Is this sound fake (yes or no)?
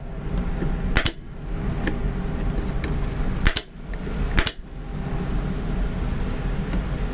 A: no